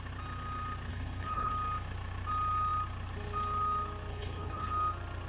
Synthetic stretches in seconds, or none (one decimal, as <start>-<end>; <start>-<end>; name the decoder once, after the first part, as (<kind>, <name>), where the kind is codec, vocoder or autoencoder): 0.9-1.5 (codec, HILCodec); 4.1-4.7